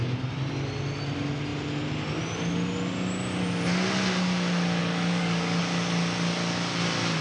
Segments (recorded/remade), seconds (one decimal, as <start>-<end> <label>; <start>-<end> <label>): 0.0-4.8 recorded; 4.8-5.6 remade; 5.6-7.2 recorded